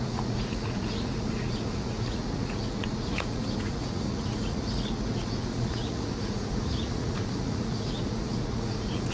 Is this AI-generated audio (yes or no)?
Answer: yes